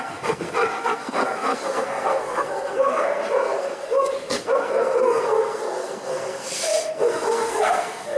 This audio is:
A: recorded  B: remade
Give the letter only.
B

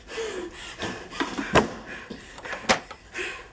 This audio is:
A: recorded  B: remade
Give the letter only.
A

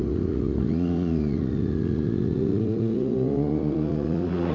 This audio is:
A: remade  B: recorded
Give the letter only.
A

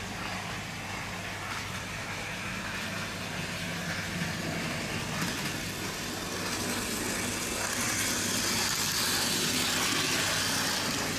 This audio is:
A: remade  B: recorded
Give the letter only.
B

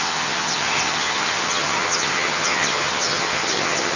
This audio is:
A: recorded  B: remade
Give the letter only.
B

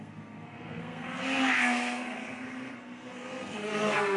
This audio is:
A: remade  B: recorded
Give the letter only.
A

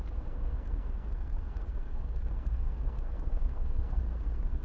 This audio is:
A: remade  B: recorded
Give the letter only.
A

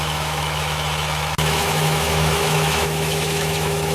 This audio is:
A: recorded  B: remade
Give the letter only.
B